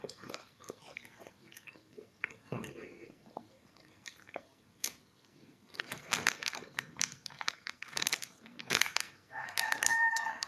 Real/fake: fake